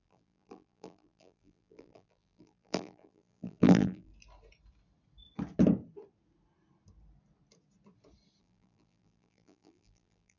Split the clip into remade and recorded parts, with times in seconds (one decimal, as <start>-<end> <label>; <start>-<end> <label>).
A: 0.0-4.1 remade; 4.1-8.4 recorded; 8.4-10.4 remade